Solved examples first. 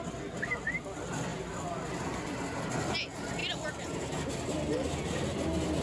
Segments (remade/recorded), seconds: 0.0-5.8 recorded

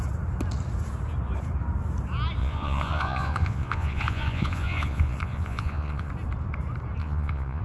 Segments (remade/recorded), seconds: 0.0-2.4 recorded; 2.4-6.1 remade; 6.1-7.0 recorded; 7.0-7.6 remade

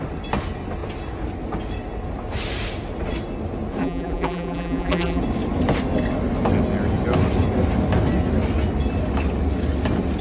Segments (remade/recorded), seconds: 0.0-3.8 recorded; 3.8-5.2 remade; 5.2-10.2 recorded